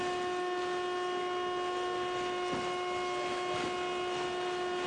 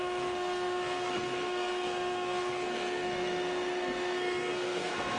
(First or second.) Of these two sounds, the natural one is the first